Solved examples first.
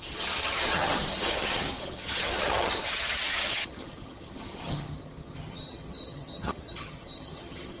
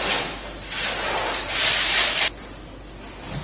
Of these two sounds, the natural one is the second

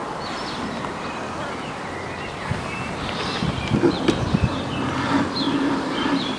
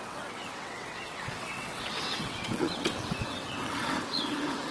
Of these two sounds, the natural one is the first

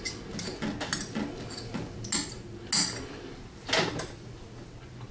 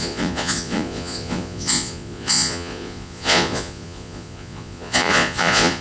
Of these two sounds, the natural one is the first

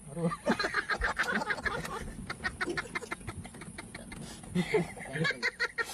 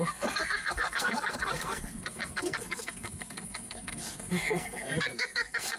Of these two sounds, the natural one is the first